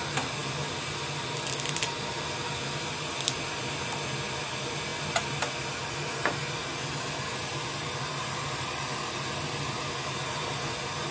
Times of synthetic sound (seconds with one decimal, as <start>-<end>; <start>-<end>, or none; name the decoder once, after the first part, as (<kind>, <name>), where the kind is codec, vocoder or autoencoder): none